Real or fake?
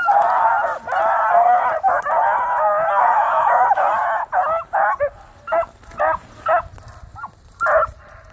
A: real